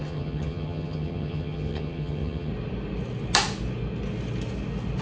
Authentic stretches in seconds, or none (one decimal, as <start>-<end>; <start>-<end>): 2.5-5.0